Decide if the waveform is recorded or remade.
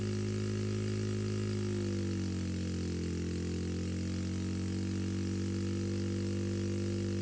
recorded